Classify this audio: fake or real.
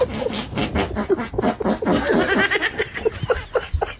real